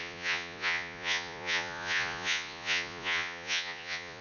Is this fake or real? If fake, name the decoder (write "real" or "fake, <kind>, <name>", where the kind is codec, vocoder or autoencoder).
fake, vocoder, Vocos